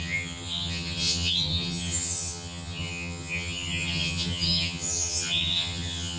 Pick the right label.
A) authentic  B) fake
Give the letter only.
B